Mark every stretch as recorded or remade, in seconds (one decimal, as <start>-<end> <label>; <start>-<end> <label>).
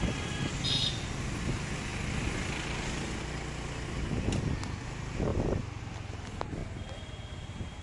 0.0-7.8 recorded